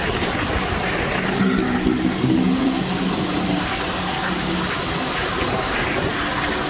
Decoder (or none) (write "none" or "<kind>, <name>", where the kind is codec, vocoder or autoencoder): none